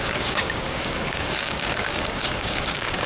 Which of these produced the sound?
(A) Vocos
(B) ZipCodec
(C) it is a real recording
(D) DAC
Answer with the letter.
D